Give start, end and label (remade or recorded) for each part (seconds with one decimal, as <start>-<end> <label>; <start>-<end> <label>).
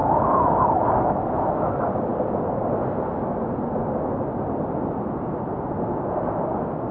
0.0-1.7 remade; 1.7-6.9 recorded